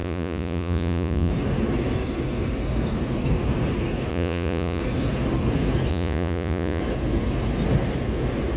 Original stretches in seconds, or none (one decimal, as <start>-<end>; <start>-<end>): 1.3-4.1; 4.8-5.9; 6.8-8.6